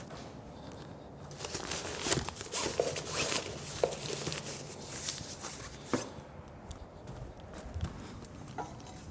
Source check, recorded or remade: recorded